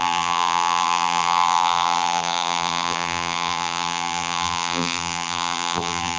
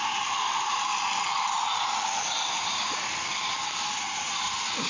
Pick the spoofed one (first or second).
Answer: first